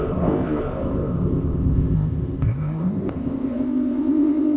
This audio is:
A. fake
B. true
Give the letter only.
A